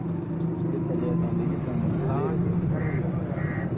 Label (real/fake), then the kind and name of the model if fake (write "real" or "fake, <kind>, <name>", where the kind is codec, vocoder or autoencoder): real